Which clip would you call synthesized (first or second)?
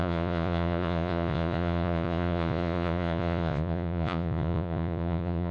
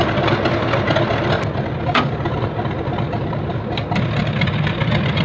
first